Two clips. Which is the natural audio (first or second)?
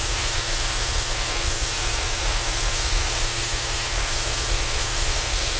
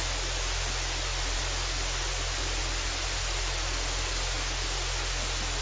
second